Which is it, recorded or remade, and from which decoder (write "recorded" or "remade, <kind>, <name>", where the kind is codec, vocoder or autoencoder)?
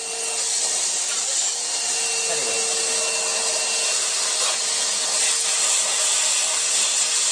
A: recorded